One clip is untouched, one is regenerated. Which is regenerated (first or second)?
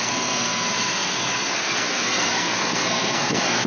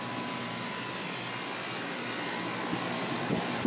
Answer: first